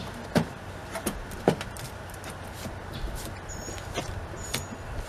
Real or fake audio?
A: real